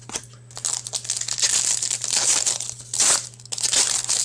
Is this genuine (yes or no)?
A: yes